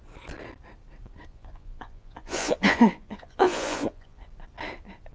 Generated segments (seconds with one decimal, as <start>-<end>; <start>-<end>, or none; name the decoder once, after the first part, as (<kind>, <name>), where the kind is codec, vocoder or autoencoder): 1.3-4.2 (vocoder, Vocos)